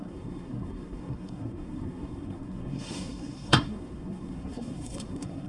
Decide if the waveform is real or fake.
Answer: fake